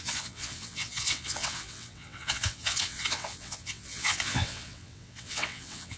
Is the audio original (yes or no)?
no